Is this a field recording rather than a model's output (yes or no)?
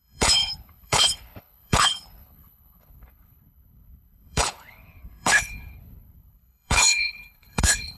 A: no